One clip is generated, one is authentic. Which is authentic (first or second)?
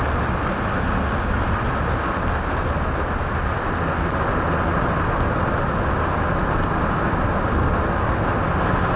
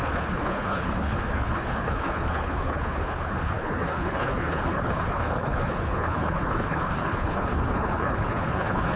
first